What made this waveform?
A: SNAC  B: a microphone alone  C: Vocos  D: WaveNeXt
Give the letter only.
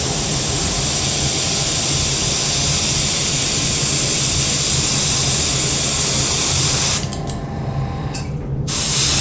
B